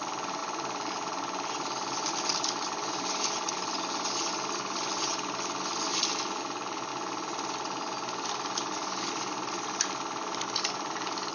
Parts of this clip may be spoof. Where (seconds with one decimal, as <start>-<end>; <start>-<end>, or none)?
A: none